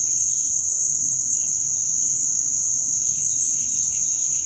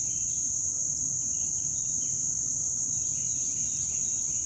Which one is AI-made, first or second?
first